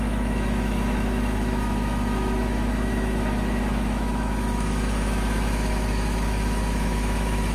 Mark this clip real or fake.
fake